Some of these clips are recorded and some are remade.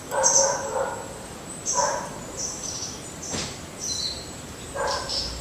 remade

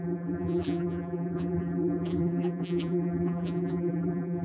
remade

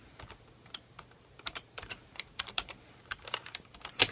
remade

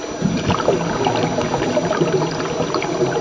recorded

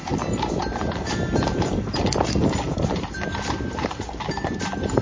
remade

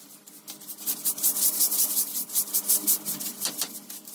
remade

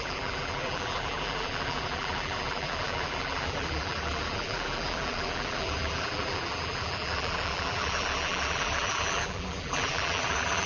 remade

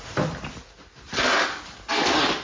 recorded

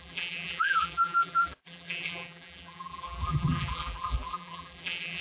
remade